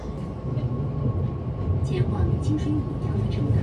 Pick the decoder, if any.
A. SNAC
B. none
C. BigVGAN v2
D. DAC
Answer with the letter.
B